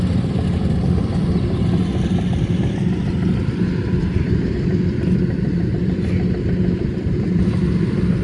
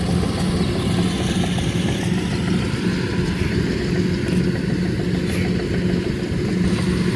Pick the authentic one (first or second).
second